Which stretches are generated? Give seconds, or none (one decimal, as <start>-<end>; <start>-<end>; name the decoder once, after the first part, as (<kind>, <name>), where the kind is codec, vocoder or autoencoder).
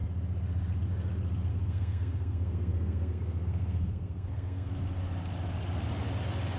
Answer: 1.5-4.7 (codec, SNAC)